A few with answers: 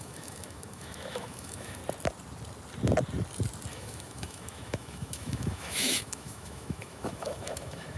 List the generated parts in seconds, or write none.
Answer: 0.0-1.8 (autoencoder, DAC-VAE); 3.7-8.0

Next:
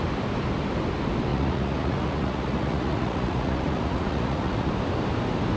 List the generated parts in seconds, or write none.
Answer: 1.3-4.7 (vocoder, Vocos)

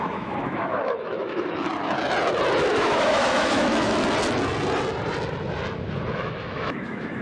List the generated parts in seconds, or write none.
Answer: 0.0-1.7 (autoencoder, DAC-VAE); 2.7-4.0; 6.1-7.2

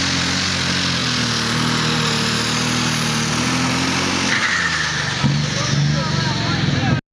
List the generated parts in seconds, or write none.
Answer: none

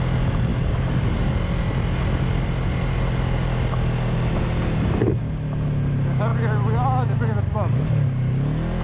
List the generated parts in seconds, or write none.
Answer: none

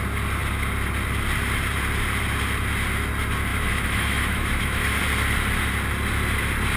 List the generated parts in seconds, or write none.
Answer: 3.5-5.0 (autoencoder, DAC-VAE)

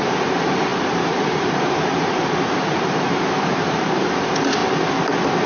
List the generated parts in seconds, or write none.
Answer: 0.0-5.5 (vocoder, BigVGAN v2)